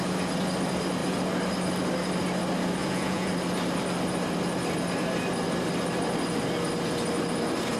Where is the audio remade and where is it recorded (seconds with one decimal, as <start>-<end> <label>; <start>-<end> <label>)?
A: 0.0-2.8 recorded; 2.8-3.3 remade; 3.3-7.8 recorded